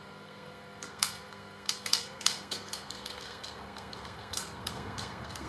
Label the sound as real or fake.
fake